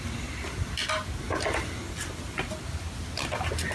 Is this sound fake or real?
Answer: real